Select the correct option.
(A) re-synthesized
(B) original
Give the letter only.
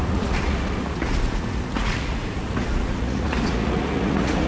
A